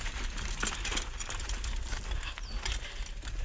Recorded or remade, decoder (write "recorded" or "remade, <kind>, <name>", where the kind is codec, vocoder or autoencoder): recorded